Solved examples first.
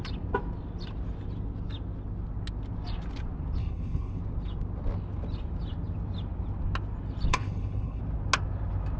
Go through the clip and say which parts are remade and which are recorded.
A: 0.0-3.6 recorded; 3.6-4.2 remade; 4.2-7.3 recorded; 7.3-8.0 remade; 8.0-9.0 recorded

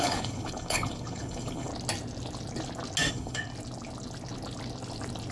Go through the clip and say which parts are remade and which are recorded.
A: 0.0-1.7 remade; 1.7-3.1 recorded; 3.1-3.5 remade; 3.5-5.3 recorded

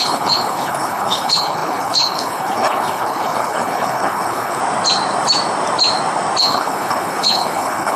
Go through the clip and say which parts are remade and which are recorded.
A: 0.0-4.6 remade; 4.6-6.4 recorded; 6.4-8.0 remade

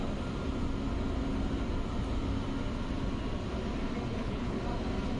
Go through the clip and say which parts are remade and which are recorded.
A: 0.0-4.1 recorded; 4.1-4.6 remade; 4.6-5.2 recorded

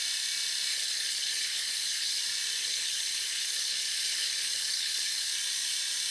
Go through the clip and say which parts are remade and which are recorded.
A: 0.0-0.7 recorded; 0.7-2.2 remade; 2.2-2.6 recorded; 2.6-5.3 remade; 5.3-6.1 recorded